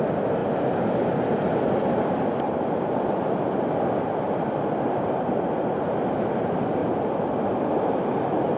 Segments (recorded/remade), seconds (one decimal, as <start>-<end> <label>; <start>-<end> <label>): 0.0-8.6 recorded